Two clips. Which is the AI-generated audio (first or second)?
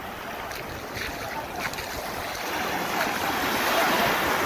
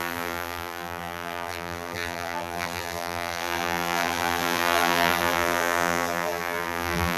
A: second